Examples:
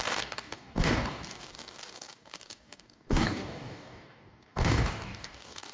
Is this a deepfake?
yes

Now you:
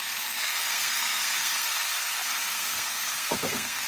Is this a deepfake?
yes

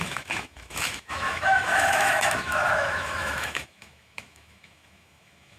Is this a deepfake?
yes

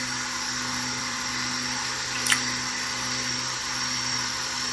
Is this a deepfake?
yes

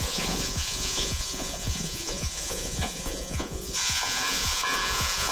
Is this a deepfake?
yes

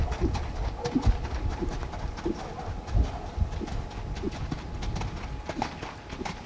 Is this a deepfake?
no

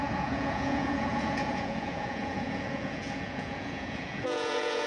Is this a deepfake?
yes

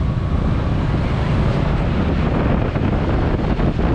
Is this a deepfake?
no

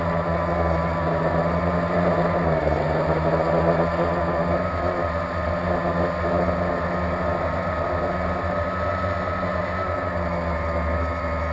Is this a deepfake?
no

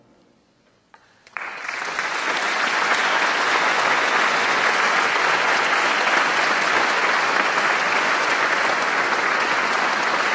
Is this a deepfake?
yes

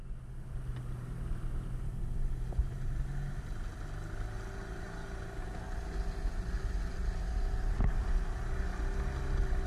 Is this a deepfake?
no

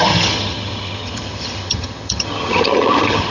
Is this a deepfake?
yes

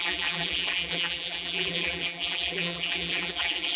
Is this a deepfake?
yes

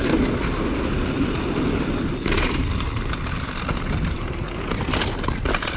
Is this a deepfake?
no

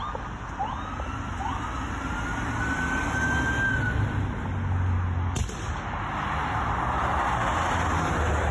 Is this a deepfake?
no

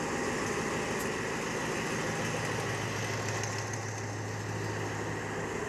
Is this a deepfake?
no